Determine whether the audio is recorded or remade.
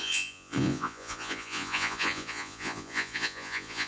remade